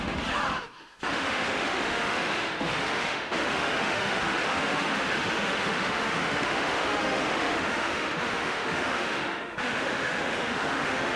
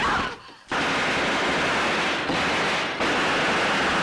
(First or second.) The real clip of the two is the second